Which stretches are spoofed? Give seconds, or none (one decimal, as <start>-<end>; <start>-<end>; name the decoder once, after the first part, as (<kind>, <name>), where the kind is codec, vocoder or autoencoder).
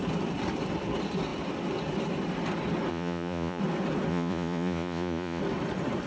2.9-3.6 (vocoder, Vocos); 4.1-5.4